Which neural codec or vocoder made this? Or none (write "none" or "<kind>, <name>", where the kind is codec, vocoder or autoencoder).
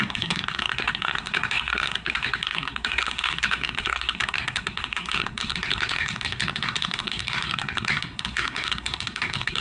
codec, SNAC